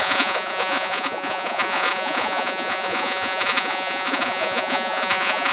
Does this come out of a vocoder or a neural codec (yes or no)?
yes